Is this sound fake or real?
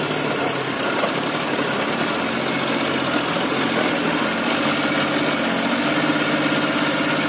real